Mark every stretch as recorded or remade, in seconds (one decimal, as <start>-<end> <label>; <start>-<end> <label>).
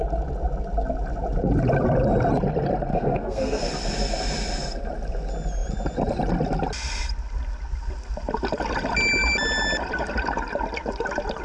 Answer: 0.0-2.9 recorded; 2.9-3.6 remade; 3.6-11.4 recorded